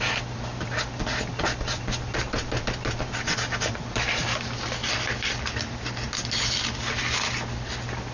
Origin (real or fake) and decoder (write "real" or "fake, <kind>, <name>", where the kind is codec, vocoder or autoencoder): real